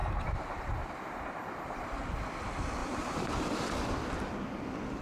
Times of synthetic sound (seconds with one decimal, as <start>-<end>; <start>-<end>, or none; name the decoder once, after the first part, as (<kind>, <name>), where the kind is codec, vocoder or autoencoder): 0.0-0.6 (vocoder, BigVGAN v2); 1.4-1.9; 2.8-3.7